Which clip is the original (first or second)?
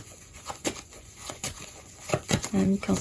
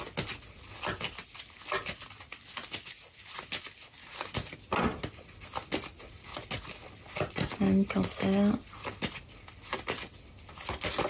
second